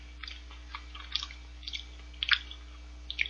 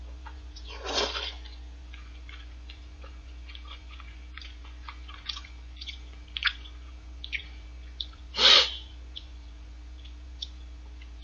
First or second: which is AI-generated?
second